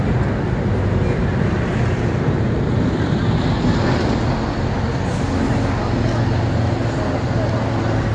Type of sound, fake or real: real